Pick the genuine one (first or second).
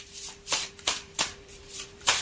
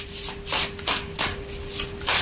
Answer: second